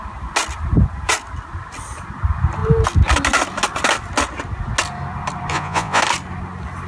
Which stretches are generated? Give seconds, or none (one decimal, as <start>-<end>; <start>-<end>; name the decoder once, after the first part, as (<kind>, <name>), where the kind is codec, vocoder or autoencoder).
5.5-6.0 (vocoder, Vocos)